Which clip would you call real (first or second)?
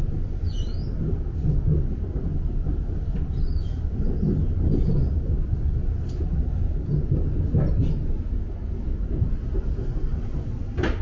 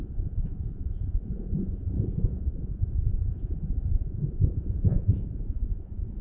first